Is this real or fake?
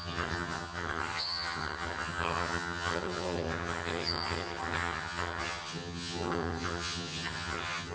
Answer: fake